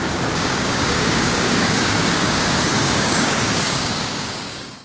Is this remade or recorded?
remade